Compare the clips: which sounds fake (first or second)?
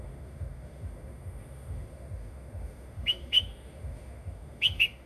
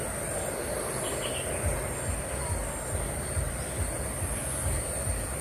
first